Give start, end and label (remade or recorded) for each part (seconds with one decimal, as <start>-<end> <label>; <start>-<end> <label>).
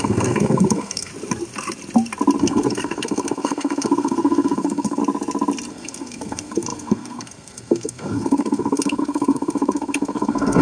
0.0-1.1 remade; 1.1-2.4 recorded; 2.4-5.0 remade; 5.0-5.7 recorded; 5.7-10.6 remade